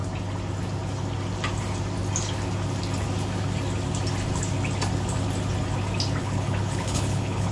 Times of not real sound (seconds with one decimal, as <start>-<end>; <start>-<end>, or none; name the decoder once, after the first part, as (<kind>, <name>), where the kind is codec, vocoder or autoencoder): 6.2-7.5 (codec, HILCodec)